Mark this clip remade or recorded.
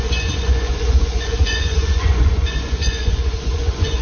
remade